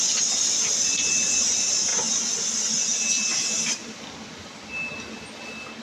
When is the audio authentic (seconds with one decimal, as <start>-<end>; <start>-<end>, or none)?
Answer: 0.0-5.8